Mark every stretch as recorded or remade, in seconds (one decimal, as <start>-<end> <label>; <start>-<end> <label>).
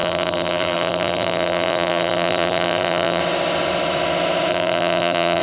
0.0-3.2 remade; 3.2-4.5 recorded; 4.5-5.4 remade